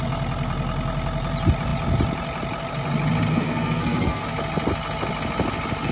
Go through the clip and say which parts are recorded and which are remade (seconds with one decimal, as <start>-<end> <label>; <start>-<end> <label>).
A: 0.0-3.3 recorded; 3.3-4.2 remade; 4.2-5.9 recorded